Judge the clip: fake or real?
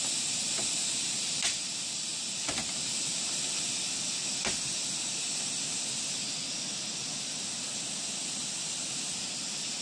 real